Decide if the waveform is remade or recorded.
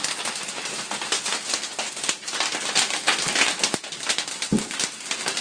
recorded